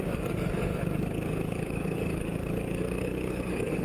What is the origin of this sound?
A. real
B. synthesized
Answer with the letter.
B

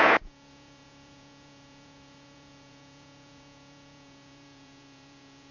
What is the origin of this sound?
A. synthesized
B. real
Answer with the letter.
A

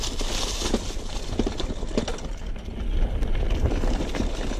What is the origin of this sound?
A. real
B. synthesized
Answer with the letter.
A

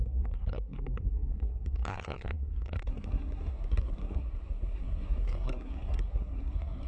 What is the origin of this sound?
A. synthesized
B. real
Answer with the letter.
A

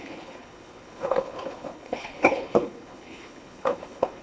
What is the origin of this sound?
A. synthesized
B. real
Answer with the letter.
A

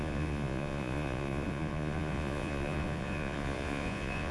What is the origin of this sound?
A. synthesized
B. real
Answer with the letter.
A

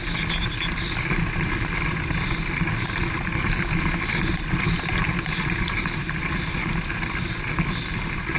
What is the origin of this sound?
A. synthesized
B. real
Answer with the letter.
B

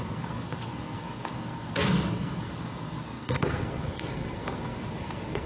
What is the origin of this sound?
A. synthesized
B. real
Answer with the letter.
A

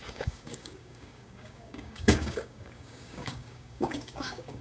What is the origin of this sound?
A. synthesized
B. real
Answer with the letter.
A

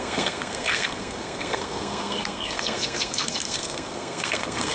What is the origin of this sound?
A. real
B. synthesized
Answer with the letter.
B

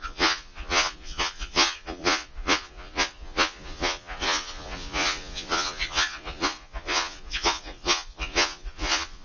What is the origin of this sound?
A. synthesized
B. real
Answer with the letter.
A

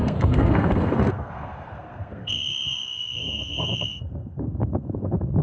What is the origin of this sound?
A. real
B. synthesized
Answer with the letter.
B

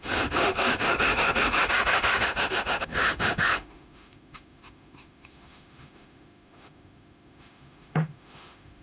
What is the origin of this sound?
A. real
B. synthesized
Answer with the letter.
B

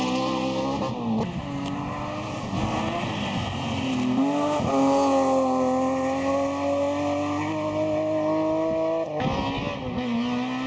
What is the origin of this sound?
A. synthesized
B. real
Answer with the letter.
B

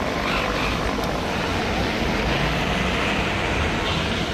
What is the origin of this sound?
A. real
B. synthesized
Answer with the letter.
A